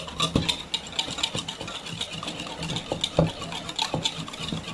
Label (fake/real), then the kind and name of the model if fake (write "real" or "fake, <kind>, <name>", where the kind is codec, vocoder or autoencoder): real